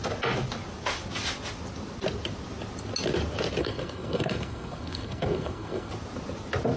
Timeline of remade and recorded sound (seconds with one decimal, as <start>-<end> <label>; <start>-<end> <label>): 0.0-3.6 recorded; 3.6-5.9 remade; 5.9-6.8 recorded